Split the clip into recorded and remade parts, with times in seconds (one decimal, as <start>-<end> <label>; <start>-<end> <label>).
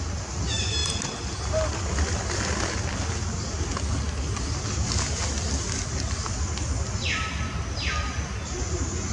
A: 0.0-9.1 recorded